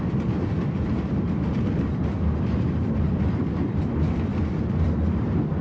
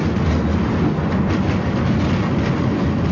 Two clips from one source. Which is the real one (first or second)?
second